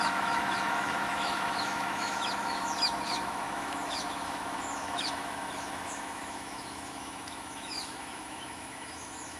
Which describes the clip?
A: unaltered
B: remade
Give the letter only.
B